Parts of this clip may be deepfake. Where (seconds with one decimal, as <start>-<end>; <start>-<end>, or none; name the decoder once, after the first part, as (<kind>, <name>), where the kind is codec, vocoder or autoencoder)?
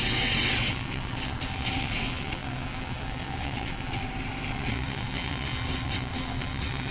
0.0-4.0 (vocoder, WaveNeXt); 4.5-6.9